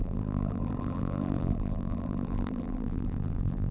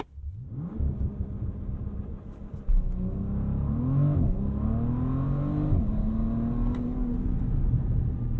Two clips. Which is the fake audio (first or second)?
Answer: first